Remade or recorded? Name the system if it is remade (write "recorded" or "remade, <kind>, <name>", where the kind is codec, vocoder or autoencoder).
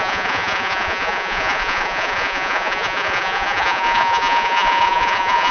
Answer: remade, vocoder, Vocos